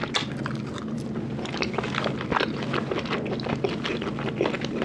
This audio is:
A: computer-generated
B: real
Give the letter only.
B